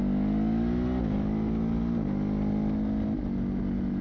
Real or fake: real